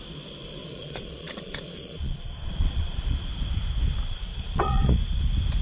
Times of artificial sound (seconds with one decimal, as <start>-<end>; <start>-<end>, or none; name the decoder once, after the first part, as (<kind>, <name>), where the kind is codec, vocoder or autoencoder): 0.6-3.3 (vocoder, Vocos); 4.3-5.0